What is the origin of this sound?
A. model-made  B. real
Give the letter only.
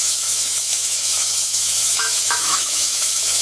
A